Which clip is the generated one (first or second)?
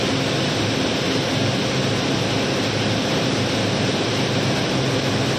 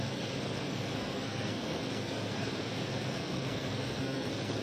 second